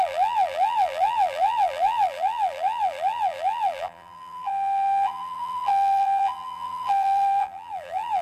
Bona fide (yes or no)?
no